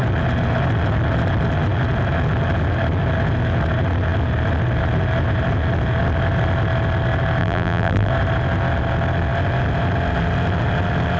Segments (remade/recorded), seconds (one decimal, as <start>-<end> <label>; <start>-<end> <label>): 0.0-7.4 recorded; 7.4-8.1 remade; 8.1-11.2 recorded